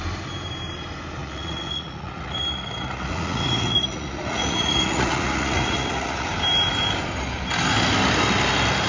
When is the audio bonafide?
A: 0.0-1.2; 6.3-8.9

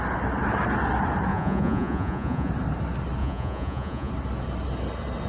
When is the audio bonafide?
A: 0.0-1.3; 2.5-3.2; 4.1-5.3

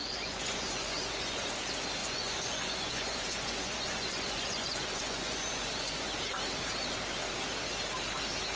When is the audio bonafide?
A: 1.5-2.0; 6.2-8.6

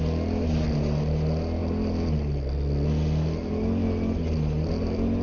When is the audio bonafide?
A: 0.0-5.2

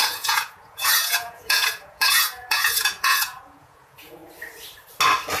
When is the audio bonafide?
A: 4.2-5.4